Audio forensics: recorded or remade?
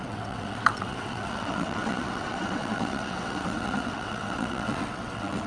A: remade